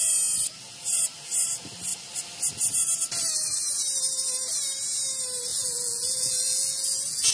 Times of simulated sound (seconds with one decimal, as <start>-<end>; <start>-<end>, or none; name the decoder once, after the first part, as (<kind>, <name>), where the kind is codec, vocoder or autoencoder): 5.5-7.3 (vocoder, Vocos)